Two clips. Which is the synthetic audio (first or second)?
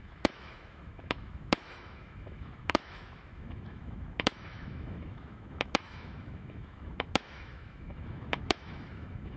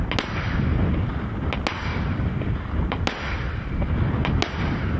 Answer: first